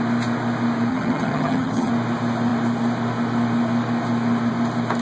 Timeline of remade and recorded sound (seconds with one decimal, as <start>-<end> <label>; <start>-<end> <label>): 0.0-0.9 recorded; 0.9-1.9 remade; 1.9-5.0 recorded